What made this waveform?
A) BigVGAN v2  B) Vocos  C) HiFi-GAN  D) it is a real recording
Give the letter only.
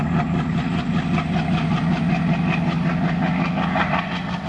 D